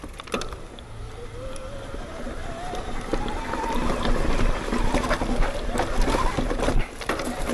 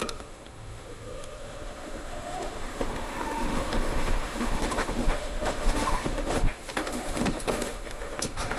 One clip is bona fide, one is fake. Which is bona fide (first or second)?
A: first